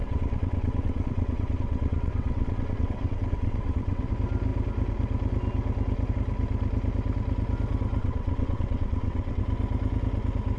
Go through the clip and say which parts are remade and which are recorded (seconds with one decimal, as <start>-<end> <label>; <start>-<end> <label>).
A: 0.0-4.1 remade; 4.1-8.0 recorded; 8.0-9.4 remade; 9.4-10.6 recorded